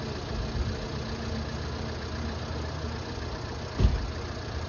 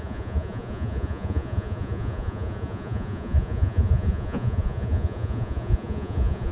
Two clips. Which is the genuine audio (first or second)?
first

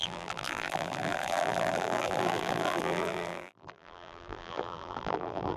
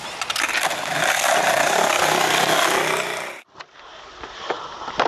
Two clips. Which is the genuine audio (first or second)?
second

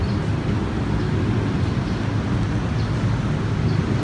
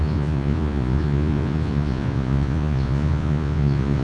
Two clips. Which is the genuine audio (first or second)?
first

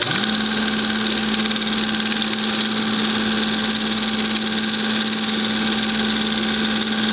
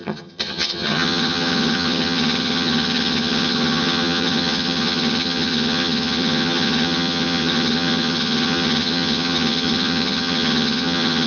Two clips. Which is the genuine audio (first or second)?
first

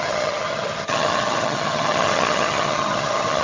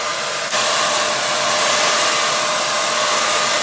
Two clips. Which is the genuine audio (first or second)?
second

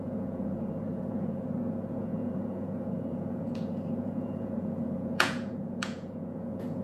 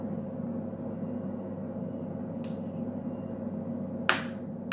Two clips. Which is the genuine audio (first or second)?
second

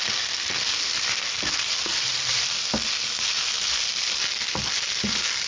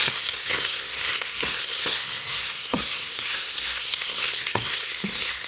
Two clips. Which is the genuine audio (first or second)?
first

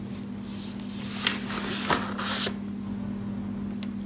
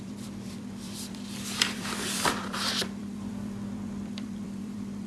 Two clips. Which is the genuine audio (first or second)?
first